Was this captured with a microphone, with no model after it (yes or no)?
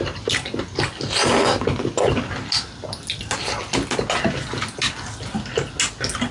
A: yes